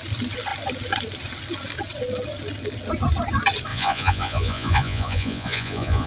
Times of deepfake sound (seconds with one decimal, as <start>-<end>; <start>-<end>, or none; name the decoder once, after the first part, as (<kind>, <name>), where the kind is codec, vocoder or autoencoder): 3.7-6.1 (vocoder, Vocos)